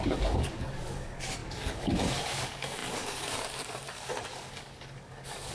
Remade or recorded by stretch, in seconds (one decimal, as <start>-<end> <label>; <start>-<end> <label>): 0.0-5.5 remade